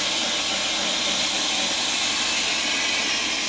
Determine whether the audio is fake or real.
real